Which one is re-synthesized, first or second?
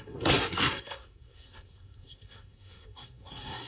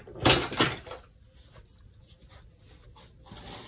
first